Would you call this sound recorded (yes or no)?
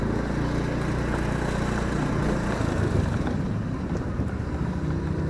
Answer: yes